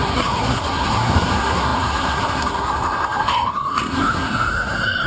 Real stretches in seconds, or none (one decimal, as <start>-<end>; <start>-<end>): none